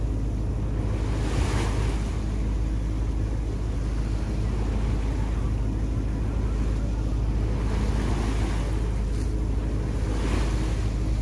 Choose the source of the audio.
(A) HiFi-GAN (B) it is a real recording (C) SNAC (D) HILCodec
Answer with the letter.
B